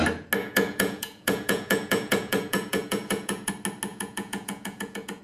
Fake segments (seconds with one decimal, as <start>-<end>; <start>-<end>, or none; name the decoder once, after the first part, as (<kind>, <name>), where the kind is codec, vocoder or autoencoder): 0.4-3.5 (vocoder, Vocos); 3.9-5.2